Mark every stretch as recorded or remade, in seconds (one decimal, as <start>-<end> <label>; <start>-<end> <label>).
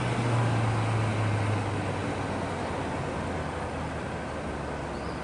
0.0-5.2 recorded